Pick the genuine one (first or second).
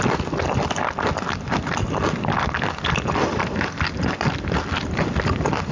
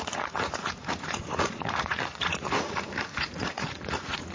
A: first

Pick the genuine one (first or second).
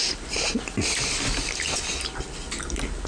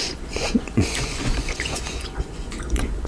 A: first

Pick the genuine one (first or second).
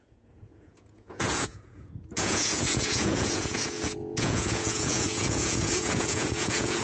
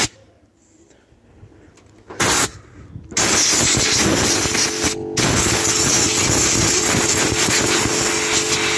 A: second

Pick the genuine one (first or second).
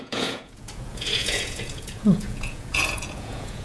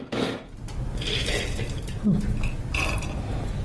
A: second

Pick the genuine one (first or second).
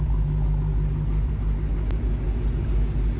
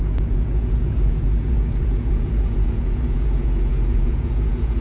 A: first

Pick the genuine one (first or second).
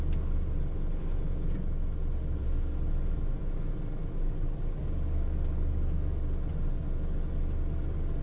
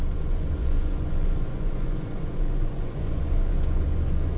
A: first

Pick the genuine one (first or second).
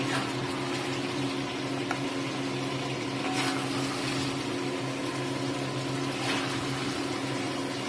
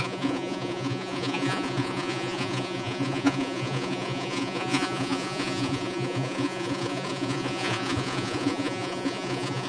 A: first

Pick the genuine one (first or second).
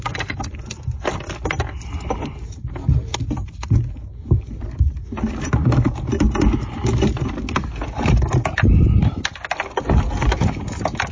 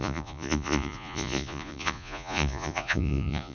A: first